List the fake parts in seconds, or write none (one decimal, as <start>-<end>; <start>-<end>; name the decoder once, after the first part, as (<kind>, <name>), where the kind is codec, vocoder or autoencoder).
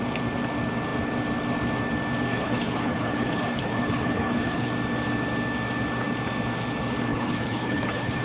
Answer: 2.3-4.7 (codec, HILCodec); 7.1-8.2